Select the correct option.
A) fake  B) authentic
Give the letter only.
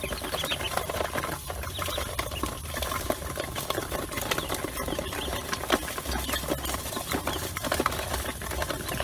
B